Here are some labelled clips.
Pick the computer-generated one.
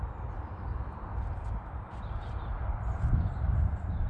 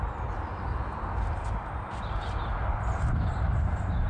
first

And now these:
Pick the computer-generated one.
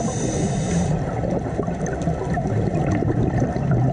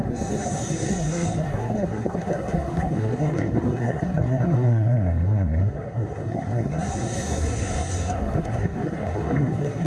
second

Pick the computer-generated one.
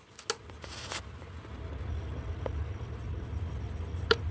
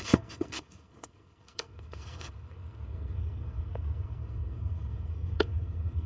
second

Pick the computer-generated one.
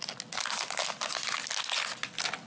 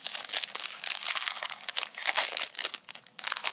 second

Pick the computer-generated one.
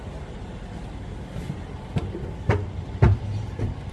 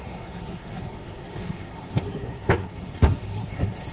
second